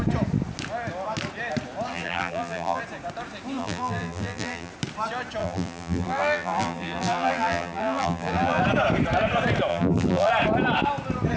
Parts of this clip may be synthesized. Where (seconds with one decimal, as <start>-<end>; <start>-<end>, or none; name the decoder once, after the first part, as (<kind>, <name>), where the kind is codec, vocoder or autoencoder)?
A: 1.9-2.8 (vocoder, BigVGAN v2); 3.6-4.7; 5.4-8.6; 9.7-10.3